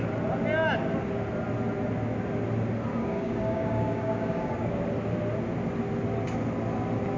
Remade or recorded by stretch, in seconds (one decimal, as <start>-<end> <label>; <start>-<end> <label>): 0.0-2.9 recorded; 2.9-4.8 remade; 4.8-7.2 recorded

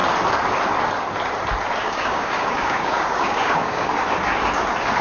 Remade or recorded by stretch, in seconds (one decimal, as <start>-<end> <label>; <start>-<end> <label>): 0.0-1.8 recorded; 1.8-3.9 remade; 3.9-5.0 recorded

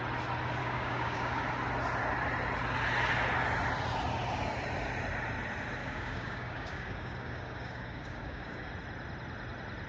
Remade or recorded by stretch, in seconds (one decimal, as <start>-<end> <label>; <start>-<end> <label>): 0.0-0.6 recorded; 0.6-1.4 remade; 1.4-5.8 recorded; 5.8-8.7 remade; 8.7-9.9 recorded

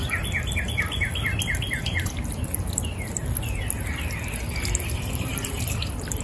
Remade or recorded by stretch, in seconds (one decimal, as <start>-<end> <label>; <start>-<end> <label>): 0.0-6.2 recorded